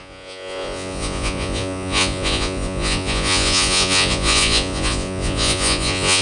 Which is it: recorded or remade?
remade